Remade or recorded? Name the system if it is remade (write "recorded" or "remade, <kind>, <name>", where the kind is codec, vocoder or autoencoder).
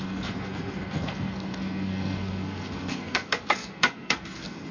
remade, codec, SNAC